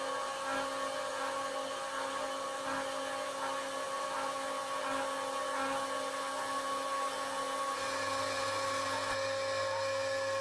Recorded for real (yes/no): yes